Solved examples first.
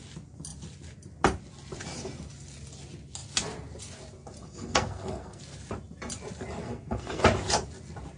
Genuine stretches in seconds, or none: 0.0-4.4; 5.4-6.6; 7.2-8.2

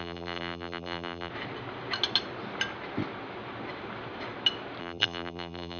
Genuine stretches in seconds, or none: 1.3-4.8

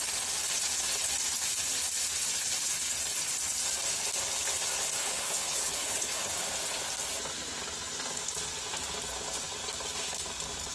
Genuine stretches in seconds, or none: 0.0-5.0; 6.3-10.7

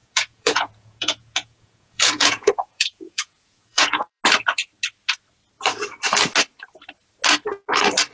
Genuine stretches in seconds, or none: 4.2-8.1

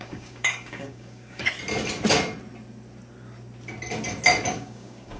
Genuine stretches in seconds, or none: 1.4-4.5

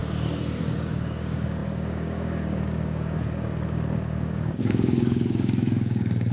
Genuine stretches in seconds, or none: 0.0-0.6

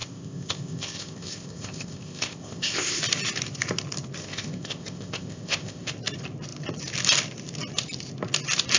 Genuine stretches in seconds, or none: 3.0-4.2; 5.9-8.8